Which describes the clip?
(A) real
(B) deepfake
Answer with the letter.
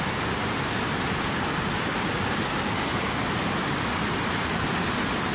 A